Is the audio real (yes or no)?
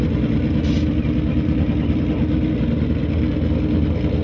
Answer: yes